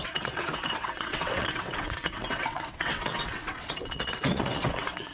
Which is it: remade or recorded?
remade